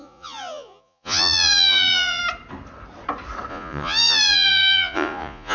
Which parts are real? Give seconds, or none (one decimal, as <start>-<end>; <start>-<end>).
2.2-3.5